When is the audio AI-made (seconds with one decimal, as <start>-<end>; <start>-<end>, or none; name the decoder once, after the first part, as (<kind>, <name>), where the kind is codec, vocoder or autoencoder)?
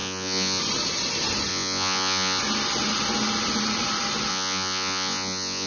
0.0-0.6 (vocoder, Vocos); 1.5-2.4; 4.3-5.7